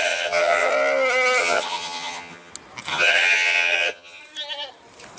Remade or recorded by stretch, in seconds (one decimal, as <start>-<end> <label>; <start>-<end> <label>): 0.0-0.7 remade; 0.7-1.4 recorded; 1.4-2.5 remade; 2.5-2.9 recorded; 2.9-4.2 remade; 4.2-5.2 recorded